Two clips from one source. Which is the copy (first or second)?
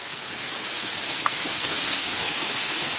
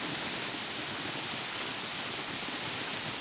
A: first